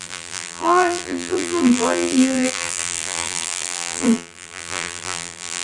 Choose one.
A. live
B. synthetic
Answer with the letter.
B